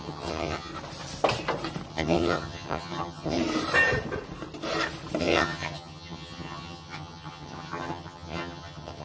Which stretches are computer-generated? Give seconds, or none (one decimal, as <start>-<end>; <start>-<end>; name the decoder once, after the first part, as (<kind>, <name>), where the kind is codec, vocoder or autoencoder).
0.0-0.7 (vocoder, HiFi-GAN); 1.9-3.4; 5.2-9.0